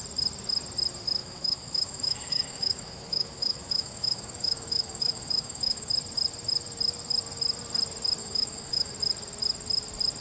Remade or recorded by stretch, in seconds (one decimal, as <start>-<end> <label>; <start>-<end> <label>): 0.0-1.2 recorded; 1.2-5.9 remade; 5.9-8.2 recorded; 8.2-8.9 remade; 8.9-10.2 recorded